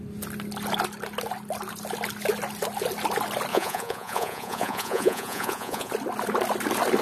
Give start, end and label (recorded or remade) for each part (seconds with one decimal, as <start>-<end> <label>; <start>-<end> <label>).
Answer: 0.0-3.5 recorded; 3.5-5.9 remade; 5.9-7.0 recorded